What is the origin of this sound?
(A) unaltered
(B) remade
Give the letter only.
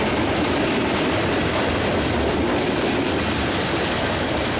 B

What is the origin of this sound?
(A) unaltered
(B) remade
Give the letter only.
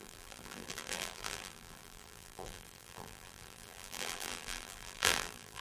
B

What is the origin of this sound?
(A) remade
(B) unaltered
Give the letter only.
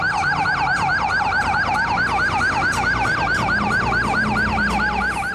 B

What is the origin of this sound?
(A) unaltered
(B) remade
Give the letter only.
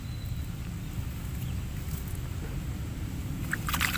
A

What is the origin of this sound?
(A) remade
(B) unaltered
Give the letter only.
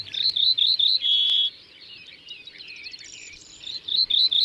A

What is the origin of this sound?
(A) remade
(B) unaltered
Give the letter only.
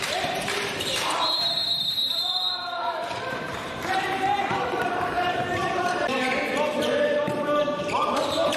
A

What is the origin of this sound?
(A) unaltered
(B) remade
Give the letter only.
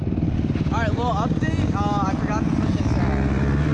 A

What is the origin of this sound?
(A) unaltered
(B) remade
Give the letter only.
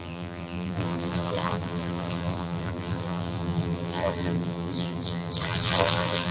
B